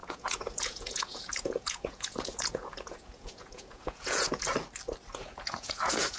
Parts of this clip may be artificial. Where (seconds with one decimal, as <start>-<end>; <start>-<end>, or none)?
0.0-4.5; 5.1-6.2